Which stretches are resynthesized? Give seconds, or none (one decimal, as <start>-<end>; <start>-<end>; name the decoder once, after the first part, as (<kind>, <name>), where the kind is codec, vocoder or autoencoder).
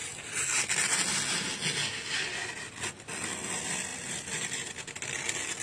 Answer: 3.9-4.7 (vocoder, BigVGAN v2)